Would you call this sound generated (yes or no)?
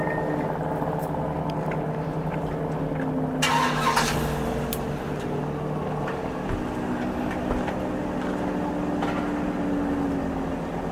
no